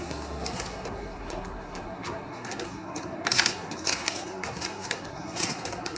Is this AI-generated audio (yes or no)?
yes